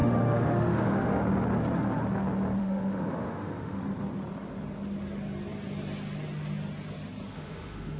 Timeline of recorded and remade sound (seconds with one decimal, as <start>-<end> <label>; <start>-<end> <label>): 0.0-1.2 remade; 1.2-2.6 recorded; 2.6-3.8 remade; 3.8-7.3 recorded; 7.3-8.0 remade